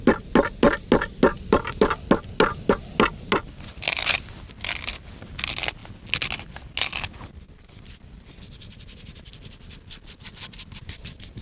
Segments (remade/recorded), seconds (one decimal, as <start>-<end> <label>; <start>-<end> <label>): 0.0-11.4 recorded